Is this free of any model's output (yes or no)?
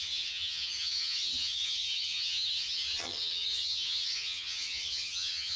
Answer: no